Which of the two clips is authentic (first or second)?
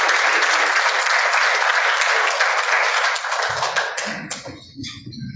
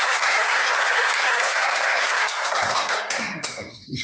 first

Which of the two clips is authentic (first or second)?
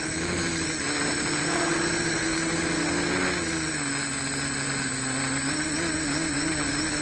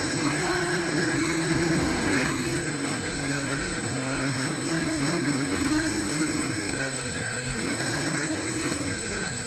first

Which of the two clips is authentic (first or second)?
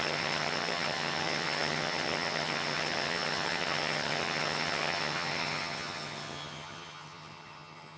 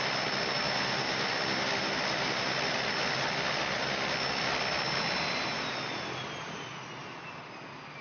second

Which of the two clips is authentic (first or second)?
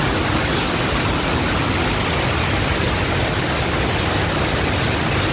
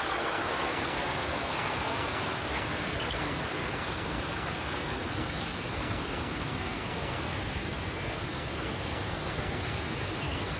first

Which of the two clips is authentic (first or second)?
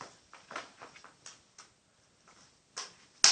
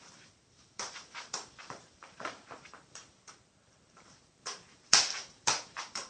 first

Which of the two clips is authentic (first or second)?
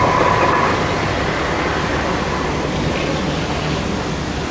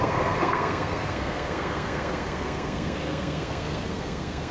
first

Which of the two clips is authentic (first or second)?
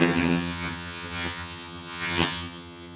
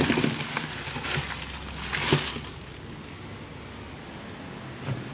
second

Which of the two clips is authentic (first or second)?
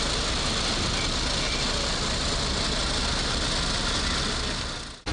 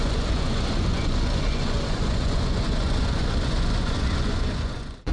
first